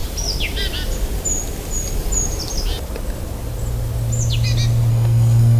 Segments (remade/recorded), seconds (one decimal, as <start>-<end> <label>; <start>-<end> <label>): 0.0-4.9 recorded; 4.9-5.6 remade